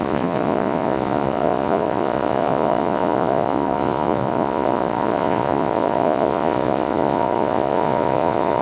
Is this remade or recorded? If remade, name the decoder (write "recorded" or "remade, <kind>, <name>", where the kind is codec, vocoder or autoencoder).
remade, vocoder, Vocos